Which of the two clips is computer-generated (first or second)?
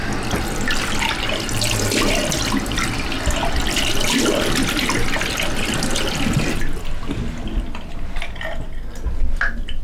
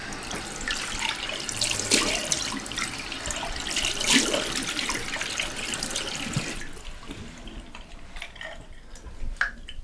second